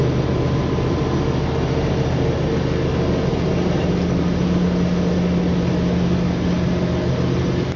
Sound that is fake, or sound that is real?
real